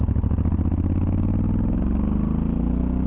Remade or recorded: recorded